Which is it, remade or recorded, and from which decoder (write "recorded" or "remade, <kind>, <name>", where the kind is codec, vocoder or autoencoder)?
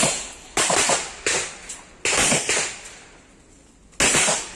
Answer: recorded